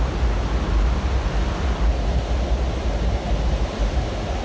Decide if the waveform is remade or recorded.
recorded